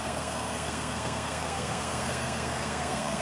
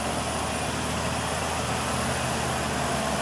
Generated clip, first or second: first